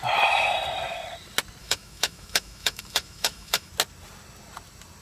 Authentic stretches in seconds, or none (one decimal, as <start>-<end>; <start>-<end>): 0.0-1.6; 3.7-5.0